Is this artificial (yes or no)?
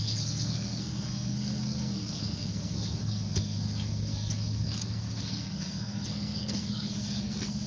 yes